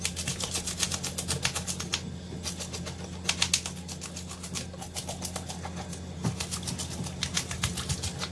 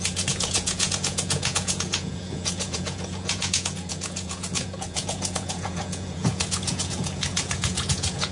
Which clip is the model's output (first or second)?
second